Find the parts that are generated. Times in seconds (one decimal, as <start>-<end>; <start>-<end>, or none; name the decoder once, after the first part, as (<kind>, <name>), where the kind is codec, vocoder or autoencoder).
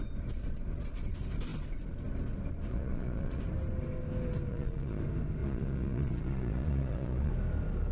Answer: 2.7-3.4 (vocoder, Vocos); 4.5-5.0; 5.4-7.3